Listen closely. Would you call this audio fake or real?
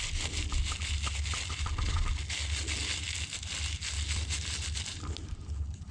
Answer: real